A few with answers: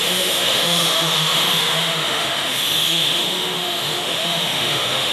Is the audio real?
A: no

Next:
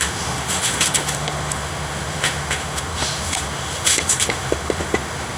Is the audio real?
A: no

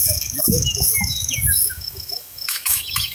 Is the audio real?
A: no